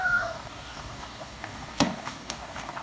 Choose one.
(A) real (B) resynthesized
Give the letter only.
B